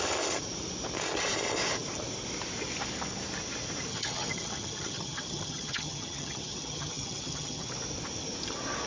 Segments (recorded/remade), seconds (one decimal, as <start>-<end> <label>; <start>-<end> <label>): 0.0-3.9 recorded; 3.9-7.7 remade; 7.7-8.9 recorded